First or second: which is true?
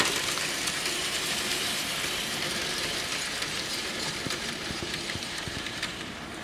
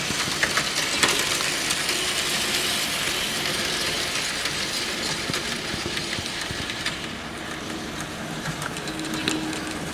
second